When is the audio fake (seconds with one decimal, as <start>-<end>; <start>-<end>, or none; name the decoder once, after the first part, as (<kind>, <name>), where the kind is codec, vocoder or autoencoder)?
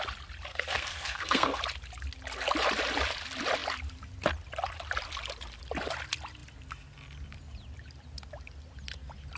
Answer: 0.5-1.6 (codec, SNAC)